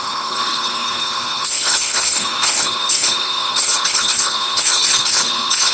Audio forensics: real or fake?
fake